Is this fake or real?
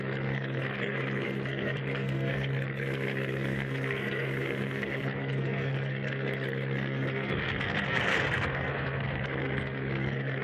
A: fake